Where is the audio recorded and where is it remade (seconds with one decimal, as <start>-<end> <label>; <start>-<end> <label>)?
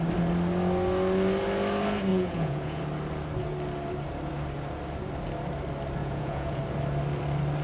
0.0-2.1 recorded; 2.1-2.8 remade; 2.8-6.0 recorded; 6.0-6.6 remade; 6.6-7.6 recorded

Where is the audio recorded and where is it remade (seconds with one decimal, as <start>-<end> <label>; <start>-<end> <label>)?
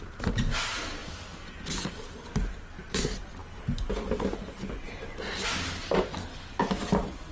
0.0-7.3 recorded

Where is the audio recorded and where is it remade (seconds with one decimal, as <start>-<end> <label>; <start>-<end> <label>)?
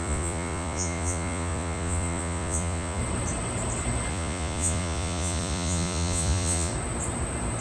0.0-3.0 remade; 3.0-4.1 recorded; 4.1-6.7 remade; 6.7-7.6 recorded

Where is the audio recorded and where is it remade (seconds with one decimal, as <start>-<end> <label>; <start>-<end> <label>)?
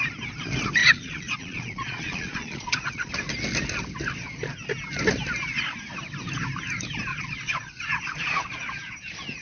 0.0-0.8 recorded; 0.8-3.1 remade; 3.1-7.1 recorded; 7.1-8.8 remade; 8.8-9.4 recorded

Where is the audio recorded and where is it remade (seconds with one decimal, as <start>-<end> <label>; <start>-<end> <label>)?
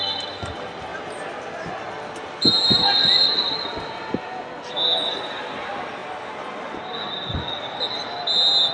0.0-8.7 recorded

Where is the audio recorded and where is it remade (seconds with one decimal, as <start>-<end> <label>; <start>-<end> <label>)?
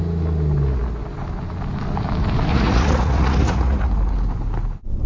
0.0-2.5 recorded; 2.5-3.9 remade; 3.9-5.1 recorded